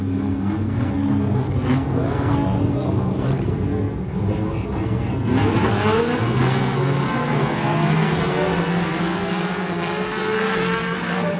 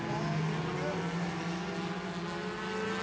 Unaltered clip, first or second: second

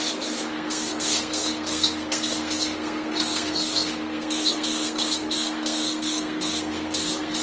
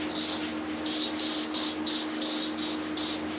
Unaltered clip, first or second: second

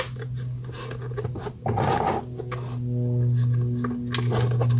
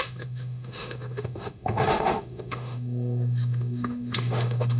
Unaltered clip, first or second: first